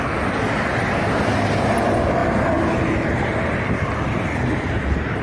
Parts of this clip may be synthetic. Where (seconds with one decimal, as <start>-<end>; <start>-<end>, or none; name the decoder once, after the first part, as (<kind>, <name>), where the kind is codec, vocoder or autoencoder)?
none